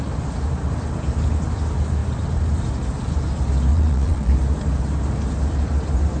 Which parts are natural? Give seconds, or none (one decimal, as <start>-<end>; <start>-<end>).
0.0-3.7; 4.3-6.2